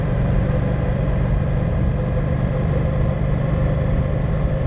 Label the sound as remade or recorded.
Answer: remade